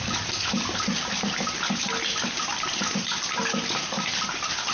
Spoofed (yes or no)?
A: no